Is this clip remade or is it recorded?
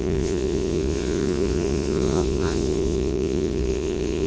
remade